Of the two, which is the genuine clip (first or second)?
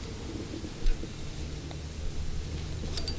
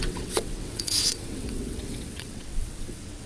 first